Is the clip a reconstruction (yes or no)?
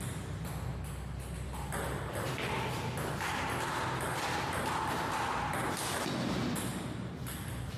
no